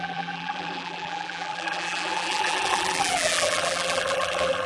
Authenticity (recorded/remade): remade